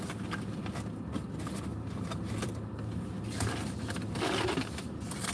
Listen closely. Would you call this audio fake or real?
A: real